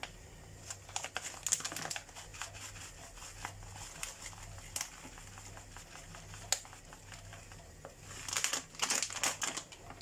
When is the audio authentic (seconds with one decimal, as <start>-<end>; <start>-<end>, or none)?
0.0-10.0